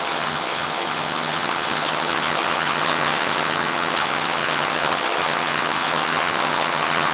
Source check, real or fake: fake